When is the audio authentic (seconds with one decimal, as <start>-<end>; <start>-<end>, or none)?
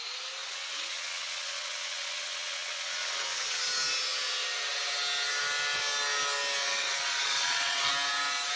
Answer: 0.0-0.4; 3.6-6.6; 7.9-8.6